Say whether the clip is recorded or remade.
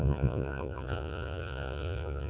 remade